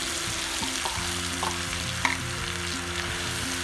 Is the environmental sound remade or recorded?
recorded